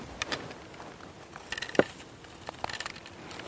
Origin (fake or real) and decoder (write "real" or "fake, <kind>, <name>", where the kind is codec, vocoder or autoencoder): real